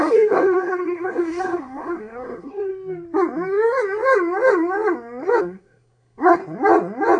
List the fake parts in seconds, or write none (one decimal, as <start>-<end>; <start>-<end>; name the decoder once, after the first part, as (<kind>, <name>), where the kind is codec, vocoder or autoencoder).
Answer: 0.0-2.7 (codec, SNAC); 5.4-6.4